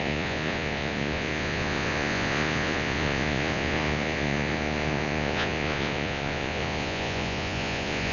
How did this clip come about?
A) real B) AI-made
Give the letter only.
B